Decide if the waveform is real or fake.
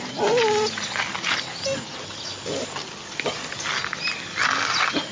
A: real